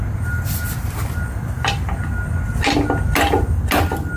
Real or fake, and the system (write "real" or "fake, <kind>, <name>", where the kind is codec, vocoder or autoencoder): real